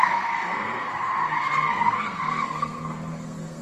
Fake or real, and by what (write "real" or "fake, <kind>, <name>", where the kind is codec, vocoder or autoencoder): fake, codec, SNAC